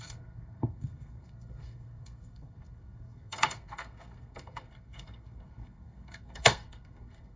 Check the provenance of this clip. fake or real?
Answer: fake